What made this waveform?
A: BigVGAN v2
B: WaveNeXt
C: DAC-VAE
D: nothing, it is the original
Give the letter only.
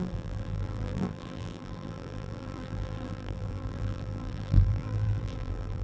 A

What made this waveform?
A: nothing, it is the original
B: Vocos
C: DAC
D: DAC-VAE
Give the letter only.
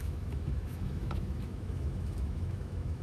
D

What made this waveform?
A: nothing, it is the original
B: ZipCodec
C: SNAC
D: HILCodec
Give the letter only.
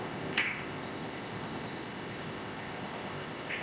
B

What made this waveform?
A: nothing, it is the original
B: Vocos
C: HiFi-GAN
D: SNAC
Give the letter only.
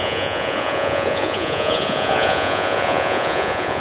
B